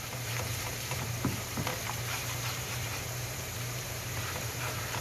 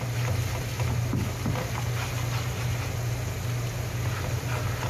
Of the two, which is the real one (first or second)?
second